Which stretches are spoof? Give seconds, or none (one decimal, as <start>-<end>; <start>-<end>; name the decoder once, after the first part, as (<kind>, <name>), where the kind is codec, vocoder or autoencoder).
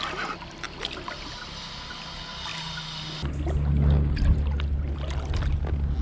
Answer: none